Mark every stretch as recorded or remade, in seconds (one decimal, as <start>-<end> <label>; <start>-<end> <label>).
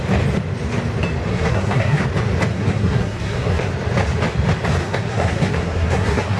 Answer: 0.0-1.3 recorded; 1.3-2.0 remade; 2.0-2.5 recorded; 2.5-3.7 remade; 3.7-4.8 recorded; 4.8-6.4 remade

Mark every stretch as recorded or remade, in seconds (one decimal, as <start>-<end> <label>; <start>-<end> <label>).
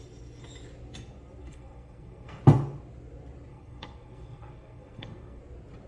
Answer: 0.0-1.4 recorded; 1.4-2.4 remade; 2.4-3.5 recorded; 3.5-5.4 remade; 5.4-5.9 recorded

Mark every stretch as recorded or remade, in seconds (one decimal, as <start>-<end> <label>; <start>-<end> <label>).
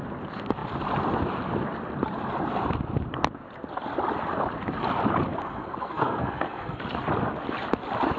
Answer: 0.0-5.4 recorded; 5.4-6.8 remade; 6.8-8.2 recorded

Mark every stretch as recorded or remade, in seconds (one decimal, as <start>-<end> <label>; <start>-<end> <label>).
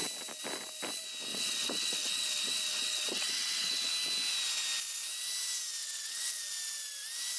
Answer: 0.0-1.3 recorded; 1.3-3.9 remade; 3.9-5.8 recorded; 5.8-6.4 remade; 6.4-7.4 recorded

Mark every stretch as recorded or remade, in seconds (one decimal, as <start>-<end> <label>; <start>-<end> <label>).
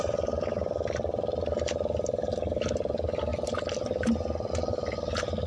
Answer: 0.0-5.5 recorded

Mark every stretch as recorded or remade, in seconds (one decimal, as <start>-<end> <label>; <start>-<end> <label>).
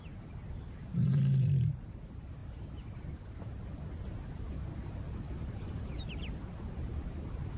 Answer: 0.0-7.6 recorded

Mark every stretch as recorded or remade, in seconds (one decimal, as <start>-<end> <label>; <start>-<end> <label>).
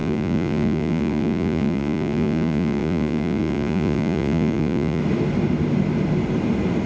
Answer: 0.0-5.0 remade; 5.0-6.9 recorded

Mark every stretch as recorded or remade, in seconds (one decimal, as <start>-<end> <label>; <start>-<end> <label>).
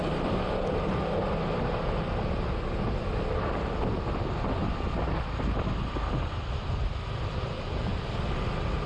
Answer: 0.0-8.9 recorded